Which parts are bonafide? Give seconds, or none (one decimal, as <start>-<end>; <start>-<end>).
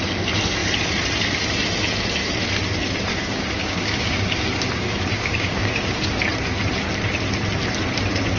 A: 0.0-3.1; 6.2-8.4